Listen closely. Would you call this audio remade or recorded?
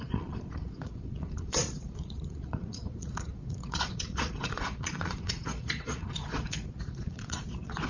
remade